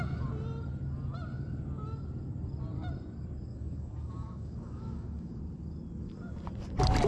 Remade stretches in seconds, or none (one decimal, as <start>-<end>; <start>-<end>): 3.5-5.4